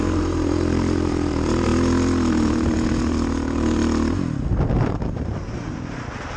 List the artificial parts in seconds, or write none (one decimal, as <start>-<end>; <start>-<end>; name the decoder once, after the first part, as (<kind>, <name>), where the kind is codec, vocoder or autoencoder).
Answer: 0.0-1.7 (vocoder, BigVGAN v2); 2.3-3.8; 4.5-6.4